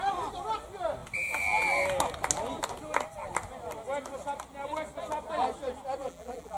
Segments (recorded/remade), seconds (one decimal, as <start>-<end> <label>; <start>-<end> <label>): 0.0-6.0 recorded; 6.0-6.6 remade